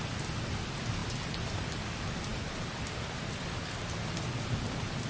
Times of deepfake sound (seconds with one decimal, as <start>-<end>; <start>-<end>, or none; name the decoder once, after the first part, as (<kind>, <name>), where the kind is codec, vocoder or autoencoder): none